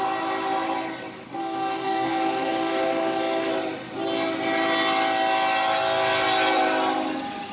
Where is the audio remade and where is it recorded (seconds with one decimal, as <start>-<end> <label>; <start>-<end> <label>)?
0.0-1.4 recorded; 1.4-3.5 remade; 3.5-7.5 recorded